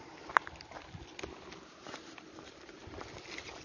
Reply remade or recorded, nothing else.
recorded